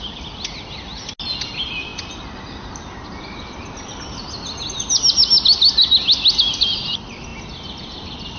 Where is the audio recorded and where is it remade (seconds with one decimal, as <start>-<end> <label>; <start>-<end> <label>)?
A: 0.0-8.4 recorded